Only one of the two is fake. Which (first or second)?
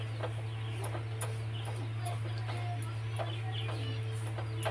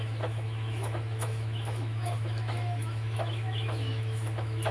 second